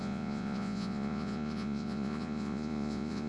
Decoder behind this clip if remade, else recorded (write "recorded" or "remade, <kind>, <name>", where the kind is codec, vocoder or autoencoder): remade, vocoder, Vocos